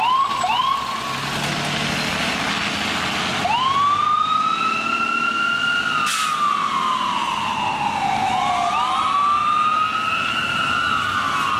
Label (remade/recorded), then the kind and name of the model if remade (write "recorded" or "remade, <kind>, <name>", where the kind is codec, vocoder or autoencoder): recorded